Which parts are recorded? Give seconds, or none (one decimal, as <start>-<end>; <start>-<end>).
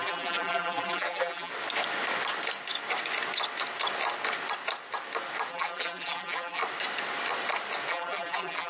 1.5-5.5; 6.6-7.9